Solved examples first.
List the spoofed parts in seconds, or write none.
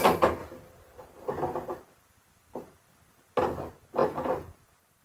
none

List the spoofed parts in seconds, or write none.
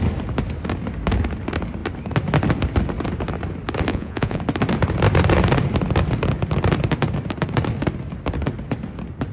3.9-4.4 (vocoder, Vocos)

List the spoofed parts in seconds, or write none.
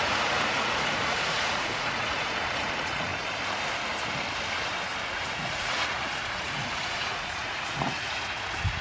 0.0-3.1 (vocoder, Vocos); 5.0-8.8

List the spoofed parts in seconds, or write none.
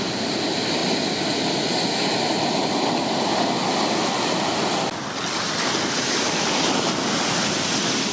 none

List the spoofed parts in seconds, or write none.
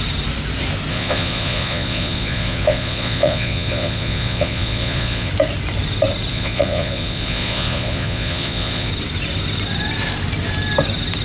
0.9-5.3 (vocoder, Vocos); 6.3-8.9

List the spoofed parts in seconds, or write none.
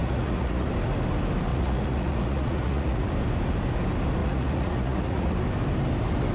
0.0-0.7 (vocoder, Vocos); 1.5-3.1; 4.2-5.3